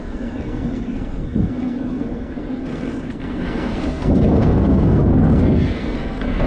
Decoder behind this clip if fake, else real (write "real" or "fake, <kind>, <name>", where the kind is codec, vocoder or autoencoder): fake, codec, SNAC